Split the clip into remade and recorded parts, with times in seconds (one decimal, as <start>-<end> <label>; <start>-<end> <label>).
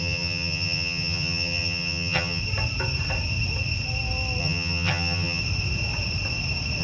0.0-2.4 remade; 2.4-4.4 recorded; 4.4-5.4 remade; 5.4-6.8 recorded